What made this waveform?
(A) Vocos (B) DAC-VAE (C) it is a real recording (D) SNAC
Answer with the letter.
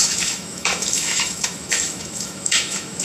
B